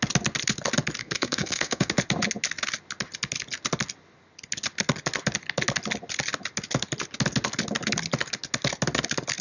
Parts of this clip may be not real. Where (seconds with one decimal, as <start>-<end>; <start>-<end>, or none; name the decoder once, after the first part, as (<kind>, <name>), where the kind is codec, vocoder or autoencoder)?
1.0-1.9 (codec, SNAC)